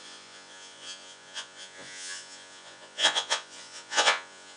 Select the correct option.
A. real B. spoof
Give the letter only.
B